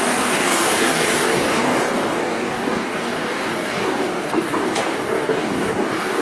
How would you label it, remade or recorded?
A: remade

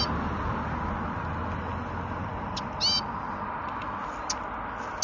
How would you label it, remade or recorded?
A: recorded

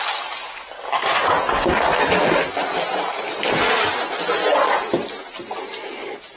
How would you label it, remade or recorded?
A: recorded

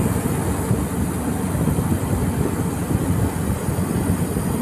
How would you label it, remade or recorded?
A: recorded